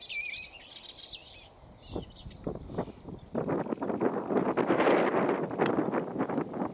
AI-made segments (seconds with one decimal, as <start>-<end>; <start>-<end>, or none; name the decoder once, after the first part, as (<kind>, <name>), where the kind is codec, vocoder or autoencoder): none